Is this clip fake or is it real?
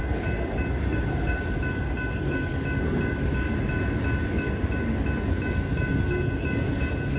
real